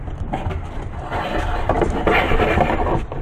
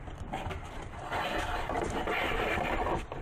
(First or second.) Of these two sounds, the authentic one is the first